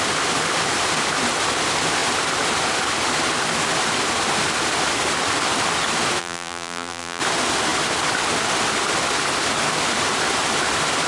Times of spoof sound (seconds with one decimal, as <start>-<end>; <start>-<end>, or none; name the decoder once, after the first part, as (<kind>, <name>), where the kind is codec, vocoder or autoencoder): 6.2-7.2 (vocoder, BigVGAN v2)